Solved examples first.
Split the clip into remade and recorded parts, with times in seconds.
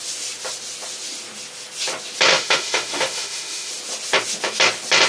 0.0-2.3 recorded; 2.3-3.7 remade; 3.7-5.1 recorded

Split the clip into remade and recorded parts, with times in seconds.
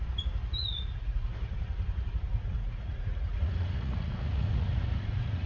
0.0-0.6 recorded; 0.6-1.3 remade; 1.3-2.3 recorded; 2.3-5.5 remade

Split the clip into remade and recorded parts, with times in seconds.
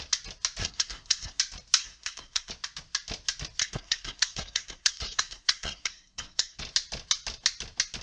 0.0-0.6 recorded; 0.6-1.4 remade; 1.4-1.8 recorded; 1.8-2.5 remade; 2.5-3.6 recorded; 3.6-6.6 remade; 6.6-8.0 recorded